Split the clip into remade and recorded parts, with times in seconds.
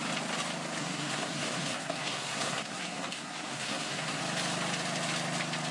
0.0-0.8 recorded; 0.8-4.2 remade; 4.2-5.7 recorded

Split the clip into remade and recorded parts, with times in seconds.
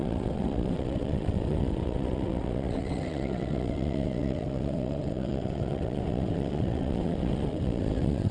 0.0-8.3 remade